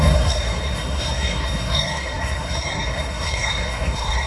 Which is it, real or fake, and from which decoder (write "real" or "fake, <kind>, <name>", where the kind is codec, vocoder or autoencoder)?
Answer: fake, codec, SNAC